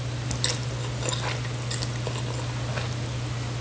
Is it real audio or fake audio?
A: real